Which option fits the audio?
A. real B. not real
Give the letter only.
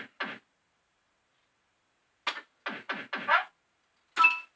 A